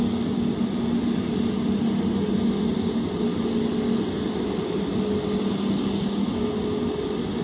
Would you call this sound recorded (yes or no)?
yes